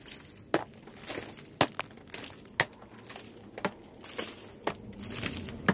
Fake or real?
real